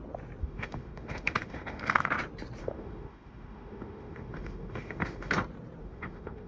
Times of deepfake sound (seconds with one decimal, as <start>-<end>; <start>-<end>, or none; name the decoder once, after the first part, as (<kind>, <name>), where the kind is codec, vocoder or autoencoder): 0.4-2.1 (autoencoder, DAC-VAE); 2.6-5.3; 5.8-6.5